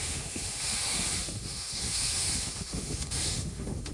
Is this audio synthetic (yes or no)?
yes